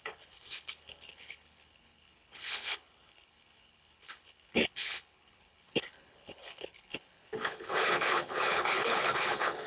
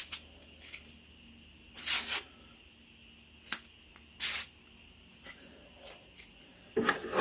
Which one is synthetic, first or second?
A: first